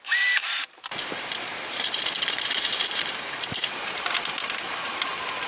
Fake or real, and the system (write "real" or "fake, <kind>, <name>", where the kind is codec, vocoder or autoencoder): fake, vocoder, BigVGAN v2